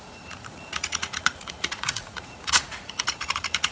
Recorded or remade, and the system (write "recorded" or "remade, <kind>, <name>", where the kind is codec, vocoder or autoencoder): remade, vocoder, Vocos